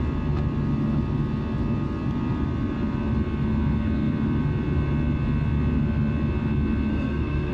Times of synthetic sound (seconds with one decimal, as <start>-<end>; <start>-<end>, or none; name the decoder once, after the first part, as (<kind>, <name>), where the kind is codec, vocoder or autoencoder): 6.9-7.5 (codec, SNAC)